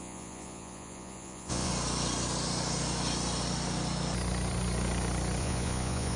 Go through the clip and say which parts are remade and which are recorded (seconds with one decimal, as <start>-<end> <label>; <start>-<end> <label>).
0.0-1.7 remade; 1.7-5.4 recorded; 5.4-6.2 remade